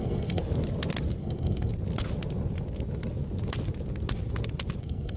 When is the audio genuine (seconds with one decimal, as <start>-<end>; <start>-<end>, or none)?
0.4-1.2; 1.7-4.8